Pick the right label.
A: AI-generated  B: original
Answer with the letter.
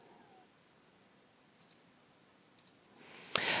B